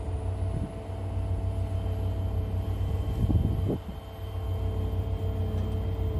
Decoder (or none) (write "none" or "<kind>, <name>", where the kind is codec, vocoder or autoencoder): none